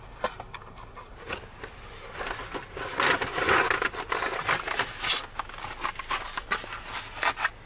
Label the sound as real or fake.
real